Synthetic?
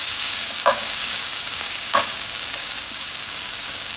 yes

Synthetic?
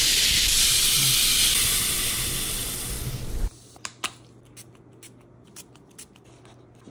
no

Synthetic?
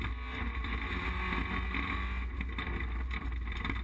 no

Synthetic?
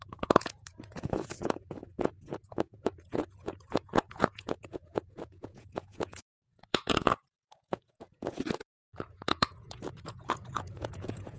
yes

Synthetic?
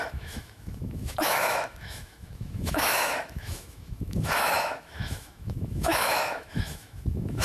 yes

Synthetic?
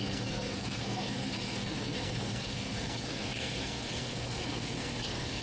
yes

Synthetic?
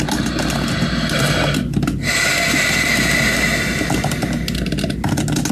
no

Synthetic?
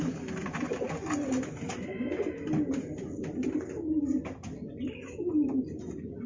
no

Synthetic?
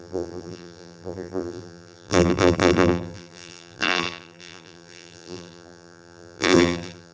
yes